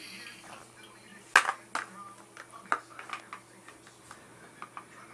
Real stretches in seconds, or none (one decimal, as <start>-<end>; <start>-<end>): 0.0-5.1